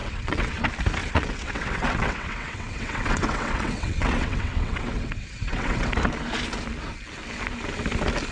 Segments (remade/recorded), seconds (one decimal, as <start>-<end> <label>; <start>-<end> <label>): 0.0-0.6 remade; 0.6-1.0 recorded; 1.0-5.9 remade; 5.9-8.3 recorded